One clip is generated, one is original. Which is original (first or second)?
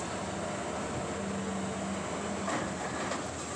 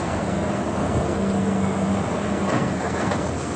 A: first